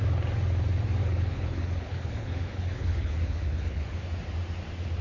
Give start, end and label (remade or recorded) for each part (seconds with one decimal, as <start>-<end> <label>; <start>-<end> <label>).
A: 0.0-1.0 recorded; 1.0-4.0 remade; 4.0-5.0 recorded